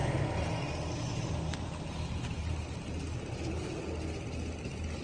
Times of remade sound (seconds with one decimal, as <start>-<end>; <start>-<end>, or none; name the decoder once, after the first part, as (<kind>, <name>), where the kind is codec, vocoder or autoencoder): none